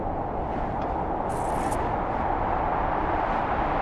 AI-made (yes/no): no